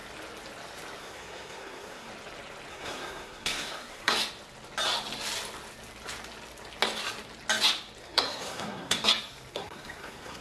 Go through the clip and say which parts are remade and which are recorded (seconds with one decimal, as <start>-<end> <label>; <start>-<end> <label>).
0.0-1.0 recorded; 1.0-2.1 remade; 2.1-2.7 recorded; 2.7-4.2 remade; 4.2-8.0 recorded; 8.0-9.0 remade; 9.0-9.5 recorded; 9.5-10.4 remade